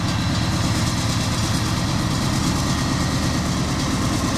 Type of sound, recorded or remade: recorded